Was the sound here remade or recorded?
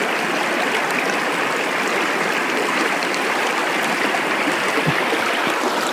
recorded